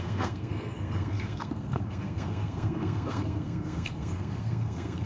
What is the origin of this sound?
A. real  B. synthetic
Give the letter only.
B